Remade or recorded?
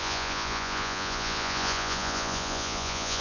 remade